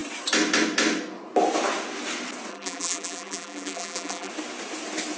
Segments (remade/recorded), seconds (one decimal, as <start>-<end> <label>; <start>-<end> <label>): 0.0-2.5 recorded; 2.5-4.3 remade; 4.3-5.2 recorded